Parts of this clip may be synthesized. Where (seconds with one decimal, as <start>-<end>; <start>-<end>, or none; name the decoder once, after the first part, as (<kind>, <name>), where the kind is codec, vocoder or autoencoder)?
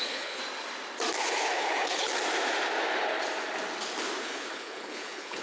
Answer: 0.0-0.4 (codec, HILCodec); 1.2-2.1; 4.2-5.4